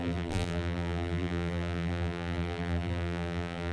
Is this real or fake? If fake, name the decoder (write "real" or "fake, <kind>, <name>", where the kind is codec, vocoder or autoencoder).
fake, vocoder, BigVGAN v2